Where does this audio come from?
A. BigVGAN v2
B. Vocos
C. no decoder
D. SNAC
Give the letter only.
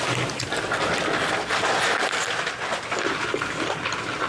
C